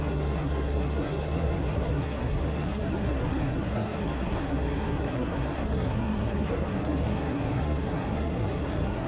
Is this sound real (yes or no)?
no